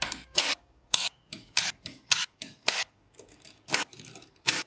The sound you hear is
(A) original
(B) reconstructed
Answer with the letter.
B